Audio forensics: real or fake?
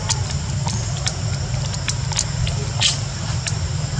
fake